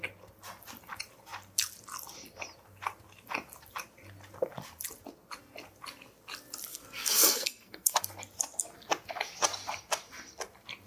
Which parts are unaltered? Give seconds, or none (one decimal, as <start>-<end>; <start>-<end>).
0.0-6.7; 8.0-10.9